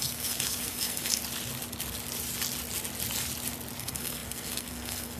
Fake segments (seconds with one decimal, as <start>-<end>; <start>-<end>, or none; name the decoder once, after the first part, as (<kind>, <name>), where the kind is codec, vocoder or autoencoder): 0.0-1.2 (codec, SNAC); 3.8-5.2